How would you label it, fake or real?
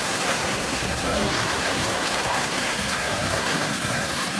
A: fake